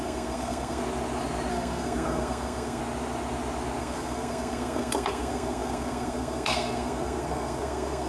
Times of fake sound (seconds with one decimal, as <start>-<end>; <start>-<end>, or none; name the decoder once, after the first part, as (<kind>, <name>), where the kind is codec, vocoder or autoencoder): 0.0-0.8 (codec, SNAC); 1.5-2.8; 3.8-8.1